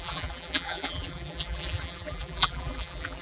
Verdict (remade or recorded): remade